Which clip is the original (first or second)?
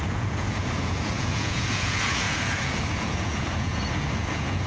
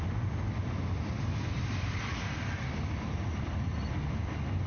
second